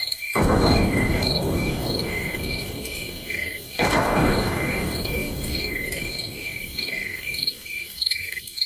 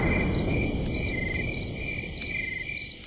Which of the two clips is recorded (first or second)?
second